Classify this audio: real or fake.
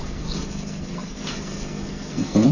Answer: fake